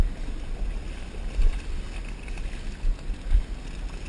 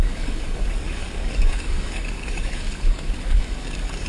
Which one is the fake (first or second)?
second